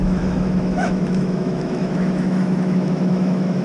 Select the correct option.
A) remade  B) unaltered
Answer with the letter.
A